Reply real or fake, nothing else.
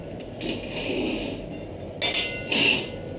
real